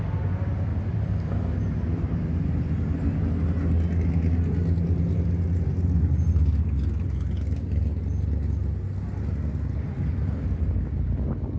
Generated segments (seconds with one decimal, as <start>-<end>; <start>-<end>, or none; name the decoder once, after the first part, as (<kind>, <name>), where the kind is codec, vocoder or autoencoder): none

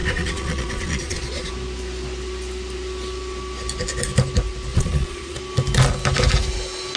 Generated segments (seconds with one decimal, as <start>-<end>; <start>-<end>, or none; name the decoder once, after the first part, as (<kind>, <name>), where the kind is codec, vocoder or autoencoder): 0.0-1.5 (vocoder, Vocos); 4.7-5.4

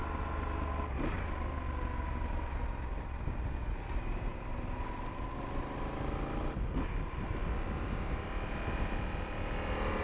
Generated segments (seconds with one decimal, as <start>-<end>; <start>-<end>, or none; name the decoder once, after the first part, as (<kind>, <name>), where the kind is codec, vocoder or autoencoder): none

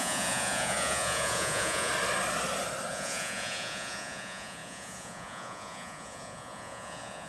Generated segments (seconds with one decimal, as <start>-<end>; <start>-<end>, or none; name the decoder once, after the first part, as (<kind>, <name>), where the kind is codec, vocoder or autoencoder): 0.0-1.9 (vocoder, Vocos); 2.9-7.3